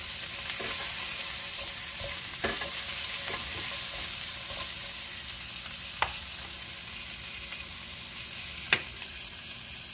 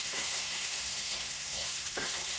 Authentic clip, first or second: first